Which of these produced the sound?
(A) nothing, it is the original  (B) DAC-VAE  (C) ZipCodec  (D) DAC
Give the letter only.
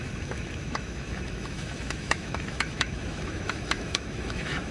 B